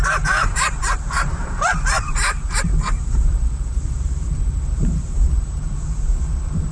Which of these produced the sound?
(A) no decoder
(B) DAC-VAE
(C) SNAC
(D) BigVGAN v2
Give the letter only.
D